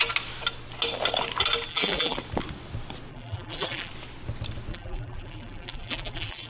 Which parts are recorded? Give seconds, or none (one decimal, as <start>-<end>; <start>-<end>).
0.0-1.7; 2.2-3.1; 3.9-4.7